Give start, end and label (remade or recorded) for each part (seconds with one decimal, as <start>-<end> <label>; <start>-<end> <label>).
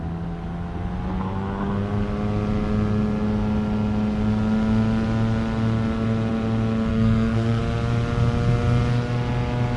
0.0-6.9 recorded; 6.9-7.6 remade; 7.6-9.8 recorded